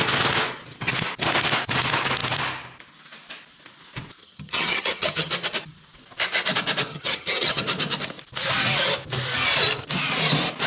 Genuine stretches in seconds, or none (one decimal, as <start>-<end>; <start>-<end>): 0.0-4.2; 5.3-6.9; 7.6-10.7